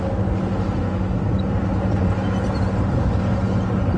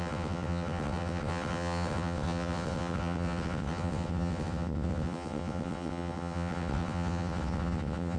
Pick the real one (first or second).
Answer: first